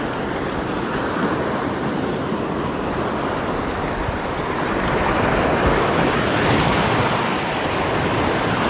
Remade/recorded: recorded